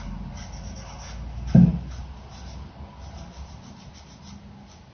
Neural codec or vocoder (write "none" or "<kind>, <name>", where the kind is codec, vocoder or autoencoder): none